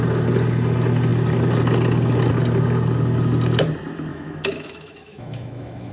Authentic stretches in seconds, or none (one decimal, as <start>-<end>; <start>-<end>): 0.0-4.1

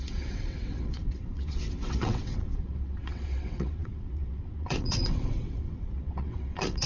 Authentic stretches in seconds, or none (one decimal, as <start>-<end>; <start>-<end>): none

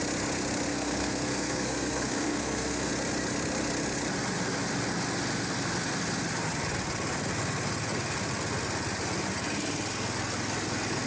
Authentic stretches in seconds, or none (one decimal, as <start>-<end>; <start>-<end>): 0.0-0.7; 2.9-11.1

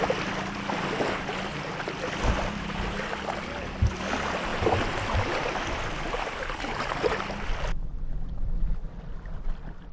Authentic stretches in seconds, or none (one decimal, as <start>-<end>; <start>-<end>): 0.0-9.9